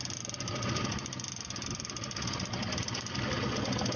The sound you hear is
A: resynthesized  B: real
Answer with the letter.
B